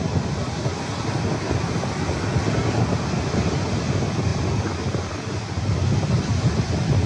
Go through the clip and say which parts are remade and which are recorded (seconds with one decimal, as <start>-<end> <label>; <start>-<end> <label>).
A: 0.0-7.1 recorded